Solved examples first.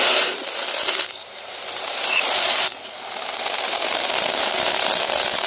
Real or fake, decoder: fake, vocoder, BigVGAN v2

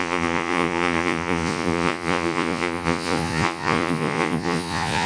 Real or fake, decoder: fake, vocoder, Vocos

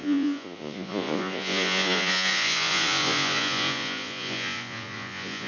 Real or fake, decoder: fake, vocoder, Vocos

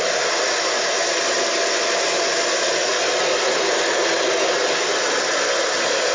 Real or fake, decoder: real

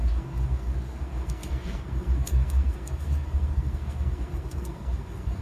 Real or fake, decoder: fake, codec, SNAC